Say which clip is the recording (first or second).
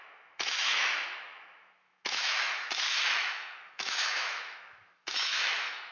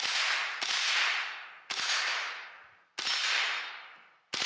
second